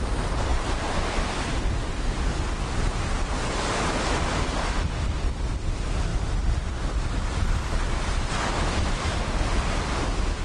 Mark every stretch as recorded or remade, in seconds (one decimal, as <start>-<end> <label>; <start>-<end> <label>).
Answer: 0.0-0.5 recorded; 0.5-1.3 remade; 1.3-10.4 recorded